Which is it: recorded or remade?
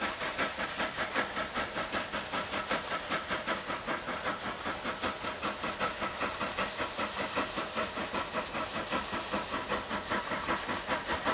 recorded